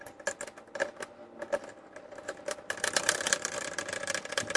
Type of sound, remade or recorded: recorded